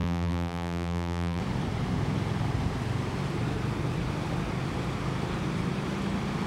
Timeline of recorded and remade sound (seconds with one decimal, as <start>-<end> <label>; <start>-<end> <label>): 0.0-1.4 remade; 1.4-6.5 recorded